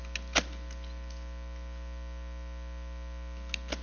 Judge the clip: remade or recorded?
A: recorded